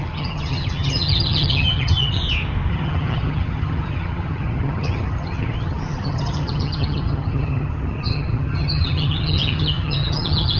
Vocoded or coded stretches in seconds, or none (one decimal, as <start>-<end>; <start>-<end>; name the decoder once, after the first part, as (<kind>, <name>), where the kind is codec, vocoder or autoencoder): 0.0-2.2 (vocoder, HiFi-GAN); 2.7-10.6